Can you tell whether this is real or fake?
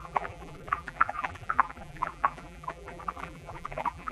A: fake